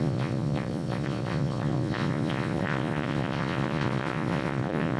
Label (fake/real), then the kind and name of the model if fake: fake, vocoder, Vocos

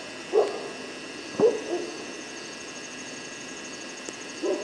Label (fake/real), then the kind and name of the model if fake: real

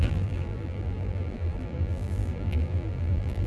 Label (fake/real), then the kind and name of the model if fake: fake, vocoder, BigVGAN v2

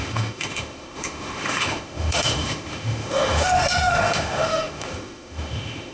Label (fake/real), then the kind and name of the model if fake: fake, autoencoder, DAC-VAE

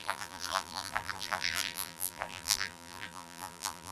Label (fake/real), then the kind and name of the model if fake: fake, vocoder, BigVGAN v2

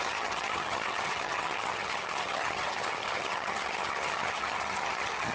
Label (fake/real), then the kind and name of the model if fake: fake, vocoder, HiFi-GAN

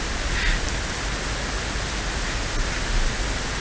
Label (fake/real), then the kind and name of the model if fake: real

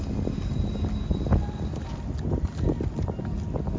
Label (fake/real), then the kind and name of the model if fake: real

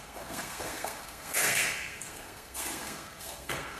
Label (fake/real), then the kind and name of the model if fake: fake, codec, SNAC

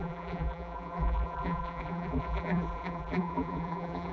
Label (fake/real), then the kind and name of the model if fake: fake, vocoder, BigVGAN v2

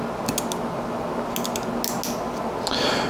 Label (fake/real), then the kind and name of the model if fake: real